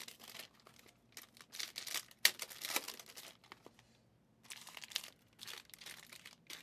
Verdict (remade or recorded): recorded